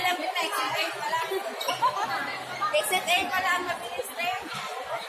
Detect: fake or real real